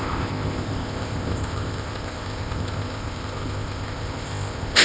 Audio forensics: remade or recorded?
remade